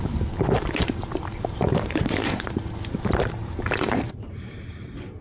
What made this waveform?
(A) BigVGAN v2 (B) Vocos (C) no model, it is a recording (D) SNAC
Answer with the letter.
A